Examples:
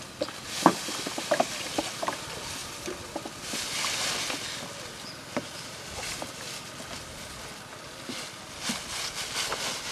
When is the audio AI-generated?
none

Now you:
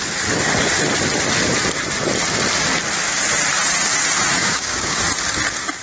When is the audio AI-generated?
4.4-5.0

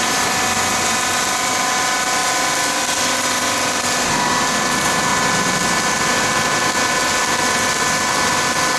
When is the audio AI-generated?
none